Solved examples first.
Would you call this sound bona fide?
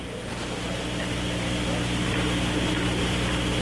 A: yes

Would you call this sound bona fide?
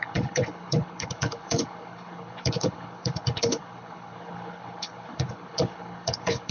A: no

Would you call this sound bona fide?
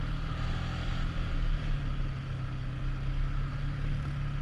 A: yes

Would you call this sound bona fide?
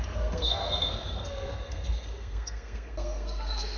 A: no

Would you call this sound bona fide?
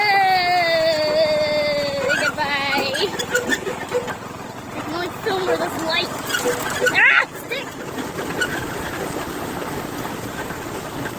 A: yes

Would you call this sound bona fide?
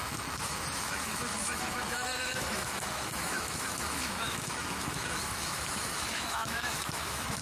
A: no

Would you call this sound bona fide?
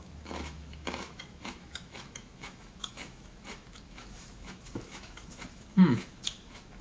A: no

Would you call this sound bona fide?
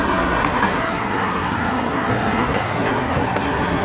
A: no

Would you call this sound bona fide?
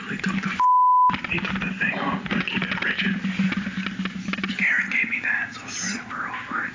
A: yes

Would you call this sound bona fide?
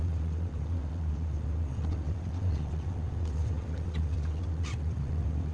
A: no